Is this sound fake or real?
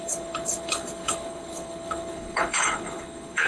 fake